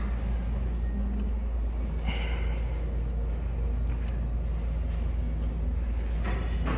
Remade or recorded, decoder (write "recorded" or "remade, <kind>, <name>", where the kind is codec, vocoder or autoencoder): recorded